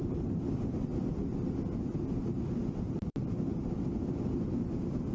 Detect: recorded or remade recorded